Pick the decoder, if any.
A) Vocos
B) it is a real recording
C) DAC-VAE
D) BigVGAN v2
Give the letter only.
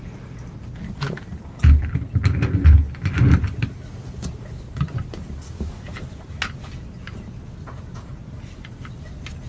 B